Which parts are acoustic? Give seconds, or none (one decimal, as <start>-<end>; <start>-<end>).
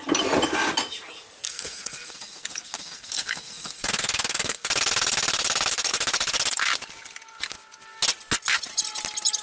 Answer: 0.0-1.4; 4.7-9.4